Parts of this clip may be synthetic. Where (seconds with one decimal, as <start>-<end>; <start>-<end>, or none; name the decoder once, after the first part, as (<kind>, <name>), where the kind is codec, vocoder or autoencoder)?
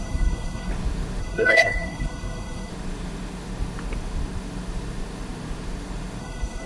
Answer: 0.0-0.7 (codec, SNAC); 1.2-2.7; 6.2-6.7